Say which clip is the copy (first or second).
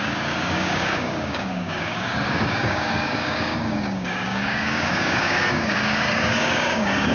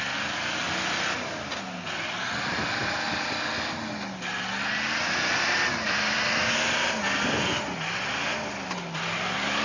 first